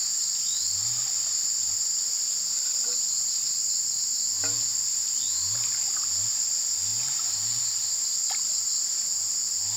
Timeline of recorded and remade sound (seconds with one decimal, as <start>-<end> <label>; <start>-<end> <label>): 0.0-5.0 recorded; 5.0-5.5 remade; 5.5-6.9 recorded; 6.9-7.6 remade; 7.6-9.8 recorded